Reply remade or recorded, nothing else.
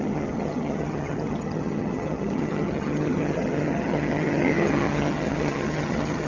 remade